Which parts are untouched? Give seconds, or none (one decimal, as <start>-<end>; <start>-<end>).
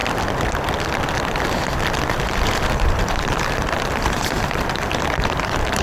0.0-2.1